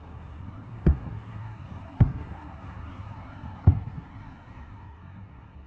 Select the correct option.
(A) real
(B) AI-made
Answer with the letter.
B